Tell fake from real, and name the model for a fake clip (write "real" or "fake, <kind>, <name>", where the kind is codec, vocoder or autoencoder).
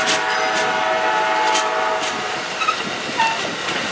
real